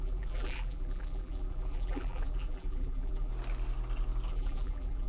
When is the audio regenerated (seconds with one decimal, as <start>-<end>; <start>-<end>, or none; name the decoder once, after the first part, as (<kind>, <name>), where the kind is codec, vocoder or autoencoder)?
0.0-3.3 (vocoder, BigVGAN v2); 4.3-5.1